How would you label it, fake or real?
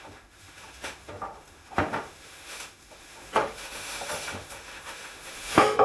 fake